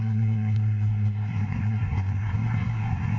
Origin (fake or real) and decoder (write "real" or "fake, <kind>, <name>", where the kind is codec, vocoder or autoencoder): fake, codec, SNAC